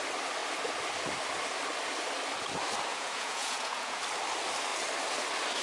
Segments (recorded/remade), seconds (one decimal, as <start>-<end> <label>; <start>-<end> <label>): 0.0-2.9 recorded; 2.9-4.0 remade; 4.0-5.6 recorded